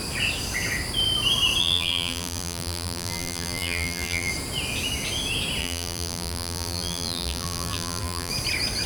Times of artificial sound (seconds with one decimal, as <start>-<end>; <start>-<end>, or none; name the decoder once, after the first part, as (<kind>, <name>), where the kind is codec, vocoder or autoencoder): 1.6-4.3 (vocoder, BigVGAN v2); 5.6-8.3